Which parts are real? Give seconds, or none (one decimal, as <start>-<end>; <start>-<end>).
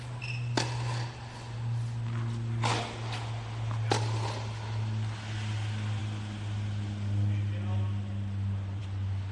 0.0-9.3